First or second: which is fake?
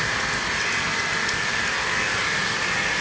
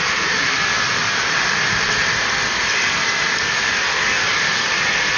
second